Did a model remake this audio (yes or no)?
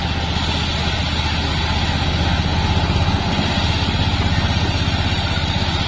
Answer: no